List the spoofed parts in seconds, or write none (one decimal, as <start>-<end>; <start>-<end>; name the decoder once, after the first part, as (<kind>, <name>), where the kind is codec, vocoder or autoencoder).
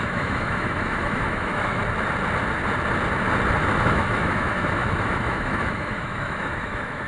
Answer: 0.0-1.8 (autoencoder, DAC-VAE); 3.6-7.1